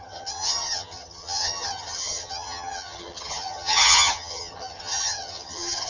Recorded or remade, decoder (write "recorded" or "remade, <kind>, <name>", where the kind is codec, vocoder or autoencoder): remade, vocoder, HiFi-GAN